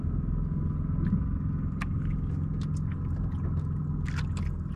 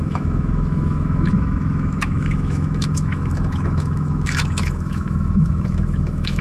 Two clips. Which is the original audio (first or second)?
first